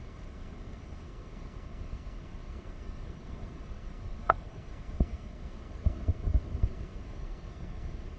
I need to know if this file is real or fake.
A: fake